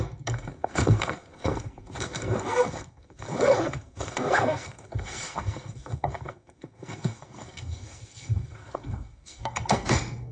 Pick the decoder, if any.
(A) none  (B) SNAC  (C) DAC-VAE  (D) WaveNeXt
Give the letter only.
B